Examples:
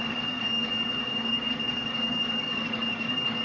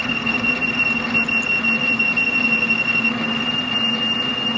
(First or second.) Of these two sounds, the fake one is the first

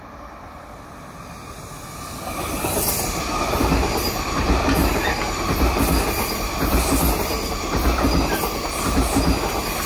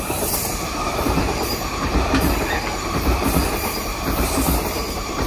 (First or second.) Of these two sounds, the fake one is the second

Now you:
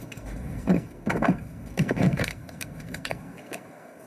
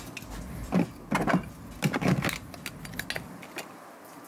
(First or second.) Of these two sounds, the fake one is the first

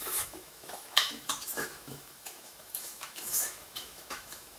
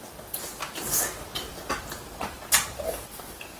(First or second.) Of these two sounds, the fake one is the first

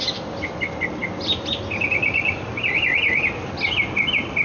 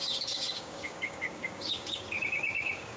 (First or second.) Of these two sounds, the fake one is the second